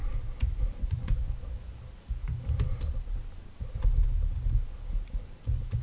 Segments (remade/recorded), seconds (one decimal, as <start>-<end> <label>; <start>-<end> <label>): 0.0-5.8 recorded